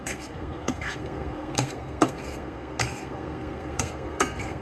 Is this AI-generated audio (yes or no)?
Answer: yes